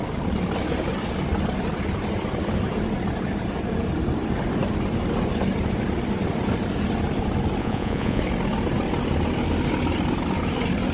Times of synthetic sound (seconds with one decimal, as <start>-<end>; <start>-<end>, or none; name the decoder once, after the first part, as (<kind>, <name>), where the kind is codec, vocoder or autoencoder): 7.6-8.2 (vocoder, Vocos)

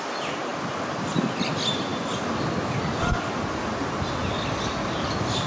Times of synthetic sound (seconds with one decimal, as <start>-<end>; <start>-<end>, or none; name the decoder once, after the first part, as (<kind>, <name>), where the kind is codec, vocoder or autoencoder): none

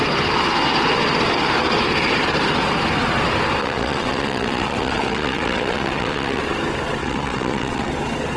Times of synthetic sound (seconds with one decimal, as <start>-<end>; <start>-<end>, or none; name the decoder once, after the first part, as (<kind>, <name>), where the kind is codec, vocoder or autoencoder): 3.6-6.4 (vocoder, WaveNeXt); 7.0-7.9

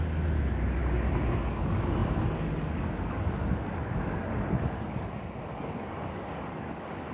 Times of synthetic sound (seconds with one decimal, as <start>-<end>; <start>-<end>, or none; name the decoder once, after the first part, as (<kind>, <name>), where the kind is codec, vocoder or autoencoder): 0.0-0.8 (codec, DAC); 1.4-7.1

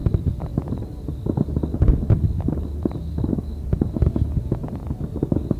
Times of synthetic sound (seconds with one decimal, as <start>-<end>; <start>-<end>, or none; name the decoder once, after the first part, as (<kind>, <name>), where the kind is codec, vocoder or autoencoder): 0.0-3.4 (vocoder, BigVGAN v2)

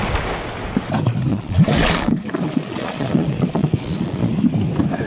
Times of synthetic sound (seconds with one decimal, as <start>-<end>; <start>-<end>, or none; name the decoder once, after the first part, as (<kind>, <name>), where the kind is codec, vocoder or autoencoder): 1.3-4.3 (vocoder, Vocos)

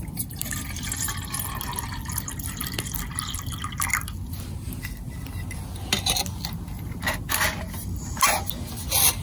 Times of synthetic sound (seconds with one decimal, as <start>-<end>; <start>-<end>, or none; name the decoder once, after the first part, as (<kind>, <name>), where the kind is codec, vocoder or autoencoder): none

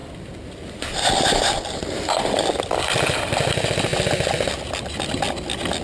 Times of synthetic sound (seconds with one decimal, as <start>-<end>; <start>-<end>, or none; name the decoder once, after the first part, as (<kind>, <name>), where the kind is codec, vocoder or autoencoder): 0.0-3.5 (vocoder, BigVGAN v2)